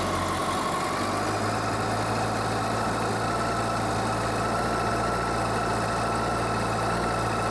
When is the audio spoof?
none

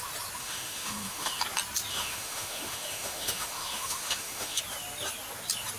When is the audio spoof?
0.4-1.4 (autoencoder, DAC-VAE); 1.9-4.6